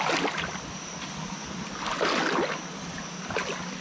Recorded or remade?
recorded